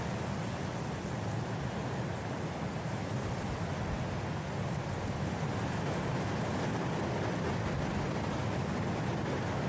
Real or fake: real